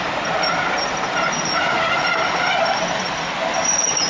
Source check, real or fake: real